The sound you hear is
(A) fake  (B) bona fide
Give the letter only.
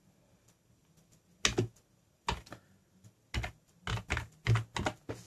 B